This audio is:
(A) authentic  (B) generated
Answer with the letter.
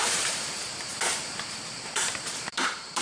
B